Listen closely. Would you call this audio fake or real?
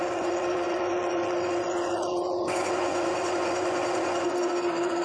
fake